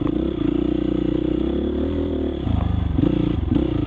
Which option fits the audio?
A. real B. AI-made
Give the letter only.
A